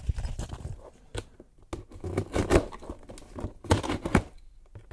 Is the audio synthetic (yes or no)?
no